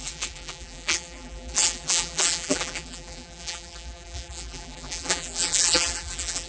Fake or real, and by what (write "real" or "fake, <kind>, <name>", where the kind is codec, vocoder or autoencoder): fake, vocoder, BigVGAN v2